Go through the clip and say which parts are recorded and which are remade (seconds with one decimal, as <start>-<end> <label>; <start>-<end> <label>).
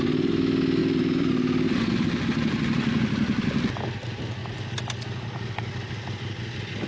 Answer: 0.0-0.8 recorded; 0.8-1.3 remade; 1.3-6.9 recorded